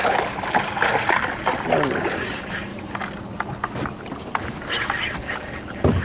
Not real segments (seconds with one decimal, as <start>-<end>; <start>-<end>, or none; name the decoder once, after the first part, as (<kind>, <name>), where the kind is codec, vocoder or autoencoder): none